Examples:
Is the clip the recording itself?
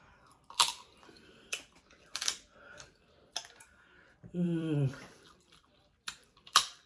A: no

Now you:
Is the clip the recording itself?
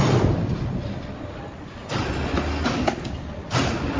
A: yes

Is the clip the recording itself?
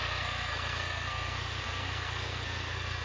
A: no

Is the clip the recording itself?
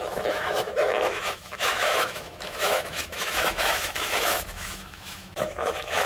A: no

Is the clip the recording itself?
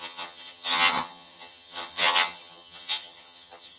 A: no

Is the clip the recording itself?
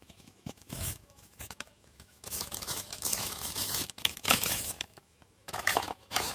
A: no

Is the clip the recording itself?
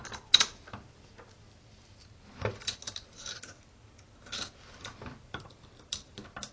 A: yes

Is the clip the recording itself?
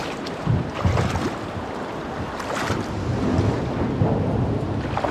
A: yes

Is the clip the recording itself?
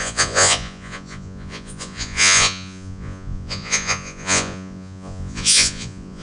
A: no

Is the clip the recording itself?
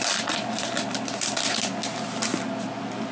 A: yes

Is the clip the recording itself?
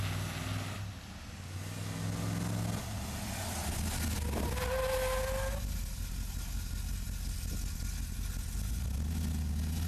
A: yes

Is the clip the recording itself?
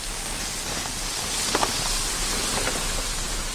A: yes